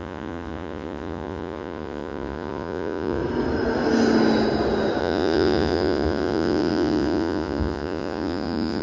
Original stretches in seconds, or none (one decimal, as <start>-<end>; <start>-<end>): 3.2-5.0